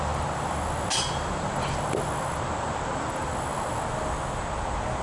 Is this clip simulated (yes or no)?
no